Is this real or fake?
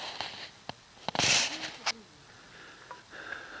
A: real